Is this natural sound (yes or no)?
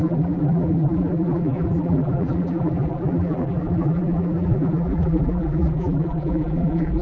no